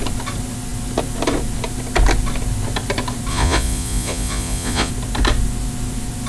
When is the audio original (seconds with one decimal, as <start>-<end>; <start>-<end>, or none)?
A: 0.0-3.3; 4.9-6.3